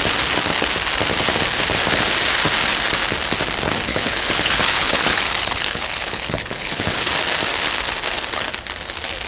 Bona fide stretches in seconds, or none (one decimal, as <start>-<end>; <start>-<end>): 0.0-3.9; 7.1-9.3